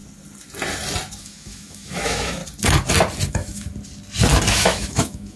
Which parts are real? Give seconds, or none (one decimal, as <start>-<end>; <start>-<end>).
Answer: 0.0-1.2; 2.4-3.3; 3.7-4.5